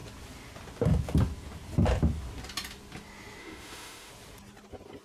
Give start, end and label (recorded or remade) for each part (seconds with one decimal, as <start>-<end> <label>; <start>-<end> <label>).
0.0-3.4 recorded; 3.4-4.1 remade; 4.1-5.0 recorded